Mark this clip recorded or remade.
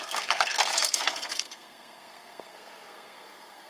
remade